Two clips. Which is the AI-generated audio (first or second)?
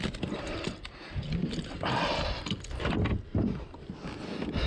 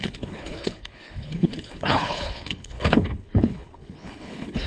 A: second